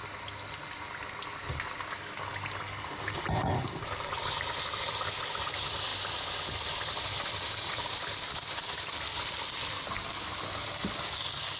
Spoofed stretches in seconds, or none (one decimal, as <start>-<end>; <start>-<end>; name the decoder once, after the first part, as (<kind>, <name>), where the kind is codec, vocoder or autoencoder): 5.9-7.9 (vocoder, BigVGAN v2)